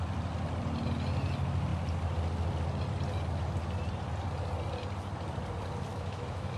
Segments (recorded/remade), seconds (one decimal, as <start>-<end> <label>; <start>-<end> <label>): 0.0-5.9 recorded; 5.9-6.6 remade